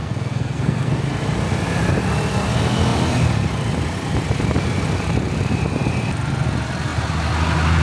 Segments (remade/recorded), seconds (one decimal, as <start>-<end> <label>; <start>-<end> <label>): 0.0-1.0 remade; 1.0-7.8 recorded